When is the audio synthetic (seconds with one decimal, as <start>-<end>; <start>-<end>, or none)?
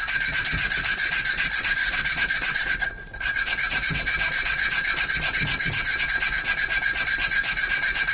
1.8-6.0; 6.9-8.1